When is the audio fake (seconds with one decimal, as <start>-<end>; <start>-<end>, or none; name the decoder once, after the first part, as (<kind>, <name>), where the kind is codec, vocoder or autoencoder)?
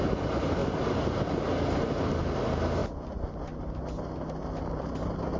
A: 0.0-2.8 (vocoder, BigVGAN v2); 4.6-5.4